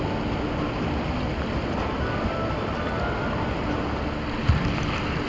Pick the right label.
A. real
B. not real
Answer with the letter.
A